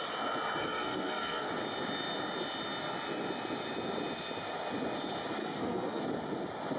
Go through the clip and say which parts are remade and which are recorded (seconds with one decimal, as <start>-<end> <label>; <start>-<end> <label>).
0.0-0.6 recorded; 0.6-1.5 remade; 1.5-5.4 recorded; 5.4-6.0 remade; 6.0-6.8 recorded